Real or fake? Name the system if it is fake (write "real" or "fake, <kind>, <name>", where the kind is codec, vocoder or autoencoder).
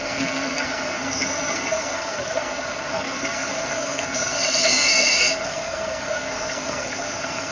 fake, codec, SNAC